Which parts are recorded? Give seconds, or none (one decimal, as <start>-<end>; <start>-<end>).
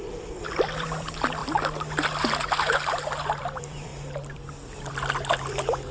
1.4-3.4; 3.9-4.5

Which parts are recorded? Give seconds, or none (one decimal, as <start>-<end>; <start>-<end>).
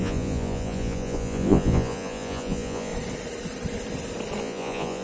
2.9-4.4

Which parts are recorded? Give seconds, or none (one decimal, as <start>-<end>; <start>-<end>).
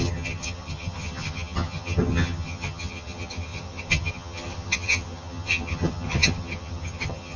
none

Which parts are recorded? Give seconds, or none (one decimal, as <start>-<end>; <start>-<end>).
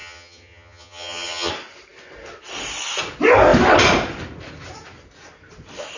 1.5-6.0